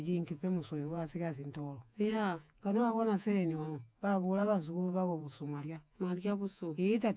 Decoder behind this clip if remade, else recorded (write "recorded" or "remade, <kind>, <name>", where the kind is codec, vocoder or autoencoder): remade, vocoder, Vocos